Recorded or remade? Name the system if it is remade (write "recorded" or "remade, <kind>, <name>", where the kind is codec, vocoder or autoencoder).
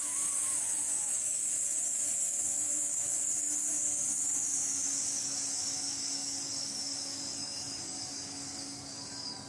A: remade, codec, DAC